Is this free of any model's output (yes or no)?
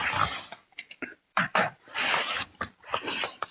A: no